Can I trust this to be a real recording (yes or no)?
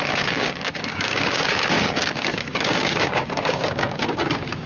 no